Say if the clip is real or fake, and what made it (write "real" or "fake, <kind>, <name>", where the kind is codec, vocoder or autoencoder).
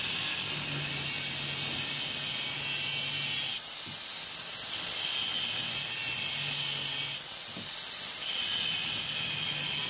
real